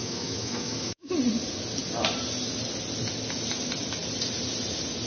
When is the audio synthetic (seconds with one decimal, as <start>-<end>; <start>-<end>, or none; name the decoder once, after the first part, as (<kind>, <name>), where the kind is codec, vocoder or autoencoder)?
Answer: 0.0-1.1 (autoencoder, DAC-VAE)